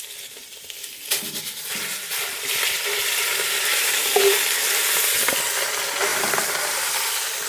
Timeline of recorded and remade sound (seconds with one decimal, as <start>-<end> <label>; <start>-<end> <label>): 0.0-1.7 recorded; 1.7-2.5 remade; 2.5-3.7 recorded; 3.7-4.4 remade; 4.4-7.5 recorded